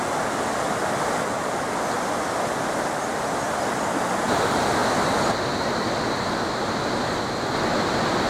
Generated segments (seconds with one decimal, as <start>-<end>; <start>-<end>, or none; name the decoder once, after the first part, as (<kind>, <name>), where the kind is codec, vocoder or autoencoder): none